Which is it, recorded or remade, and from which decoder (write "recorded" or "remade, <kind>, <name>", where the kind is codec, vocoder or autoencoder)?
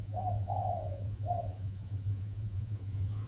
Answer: remade, vocoder, Vocos